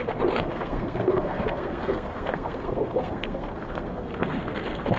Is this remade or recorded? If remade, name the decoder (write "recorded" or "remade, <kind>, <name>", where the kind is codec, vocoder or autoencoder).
remade, codec, SNAC